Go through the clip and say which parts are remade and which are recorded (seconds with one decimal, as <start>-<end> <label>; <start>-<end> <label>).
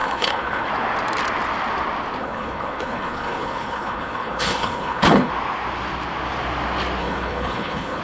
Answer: 0.0-0.7 remade; 0.7-2.2 recorded; 2.2-5.3 remade; 5.3-7.0 recorded; 7.0-8.0 remade